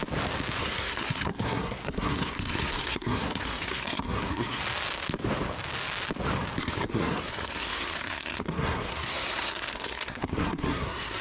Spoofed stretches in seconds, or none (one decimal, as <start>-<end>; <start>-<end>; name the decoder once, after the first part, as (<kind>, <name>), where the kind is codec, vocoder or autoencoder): 0.6-4.6 (codec, SNAC); 6.6-11.2